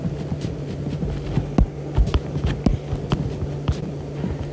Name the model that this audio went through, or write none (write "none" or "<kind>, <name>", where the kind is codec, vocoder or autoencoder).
none